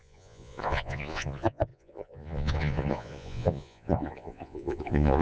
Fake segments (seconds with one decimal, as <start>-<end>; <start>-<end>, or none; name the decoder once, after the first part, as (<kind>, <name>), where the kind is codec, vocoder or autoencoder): 0.0-5.2 (vocoder, Vocos)